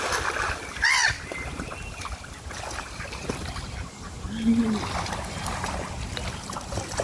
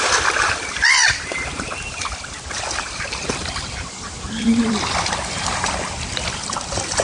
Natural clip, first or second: first